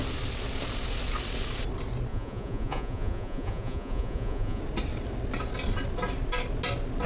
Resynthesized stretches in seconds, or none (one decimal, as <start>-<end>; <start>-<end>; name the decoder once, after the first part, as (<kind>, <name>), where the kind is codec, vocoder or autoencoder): 2.1-4.6 (vocoder, Vocos)